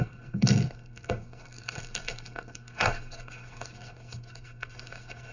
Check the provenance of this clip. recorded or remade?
remade